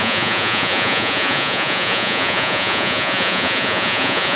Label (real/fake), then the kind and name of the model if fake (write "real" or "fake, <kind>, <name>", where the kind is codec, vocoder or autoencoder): fake, vocoder, Vocos